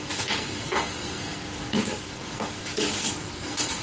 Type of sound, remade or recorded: remade